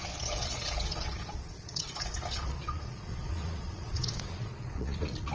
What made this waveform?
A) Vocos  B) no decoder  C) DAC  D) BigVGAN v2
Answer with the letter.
A